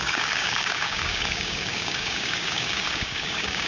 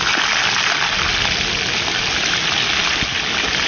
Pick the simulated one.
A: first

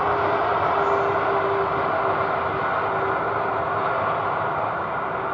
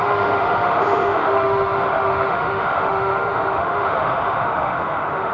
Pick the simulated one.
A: second